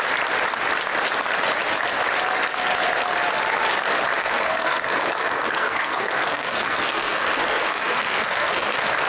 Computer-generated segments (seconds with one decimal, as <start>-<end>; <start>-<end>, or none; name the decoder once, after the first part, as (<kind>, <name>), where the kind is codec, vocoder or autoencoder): 4.2-9.1 (codec, SNAC)